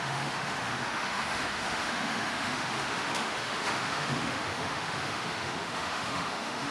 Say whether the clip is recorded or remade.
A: remade